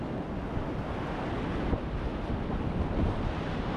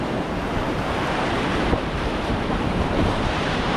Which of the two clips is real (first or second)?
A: first